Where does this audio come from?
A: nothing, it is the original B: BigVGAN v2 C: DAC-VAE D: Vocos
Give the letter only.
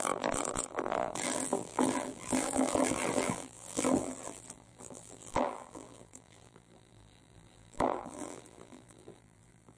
B